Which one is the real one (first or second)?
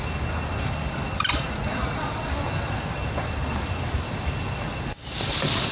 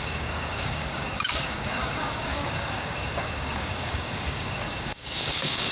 first